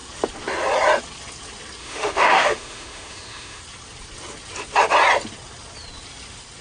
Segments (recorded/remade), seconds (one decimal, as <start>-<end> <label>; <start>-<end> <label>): 0.0-1.8 recorded; 1.8-3.6 remade; 3.6-6.6 recorded